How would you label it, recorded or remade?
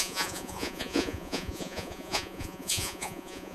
remade